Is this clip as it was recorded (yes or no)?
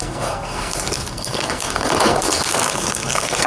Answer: no